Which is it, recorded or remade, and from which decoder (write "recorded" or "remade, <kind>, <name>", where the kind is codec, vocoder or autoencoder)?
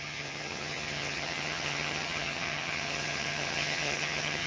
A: remade, vocoder, HiFi-GAN